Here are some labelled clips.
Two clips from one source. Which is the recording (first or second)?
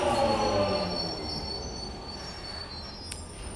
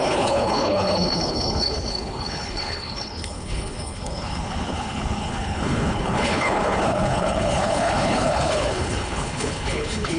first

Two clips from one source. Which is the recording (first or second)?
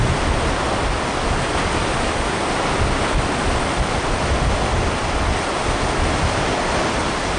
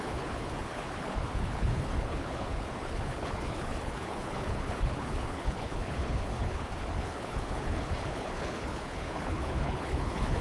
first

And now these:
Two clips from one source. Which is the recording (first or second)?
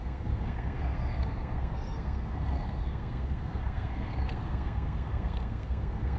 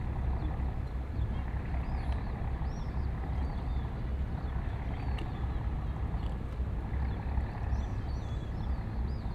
second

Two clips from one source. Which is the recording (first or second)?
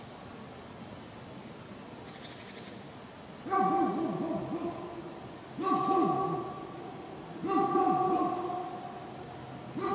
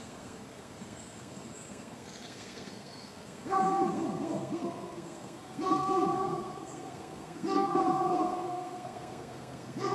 first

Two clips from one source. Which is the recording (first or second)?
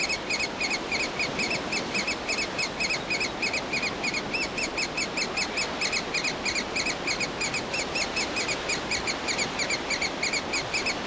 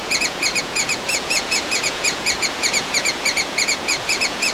first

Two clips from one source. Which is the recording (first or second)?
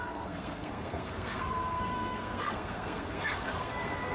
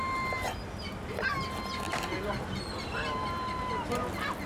second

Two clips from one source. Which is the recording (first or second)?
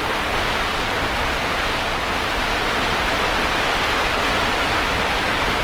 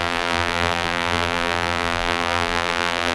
first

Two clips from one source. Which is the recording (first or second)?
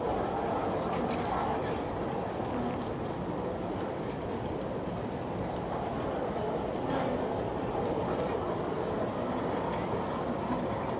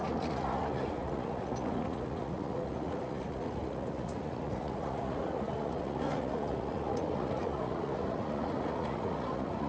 first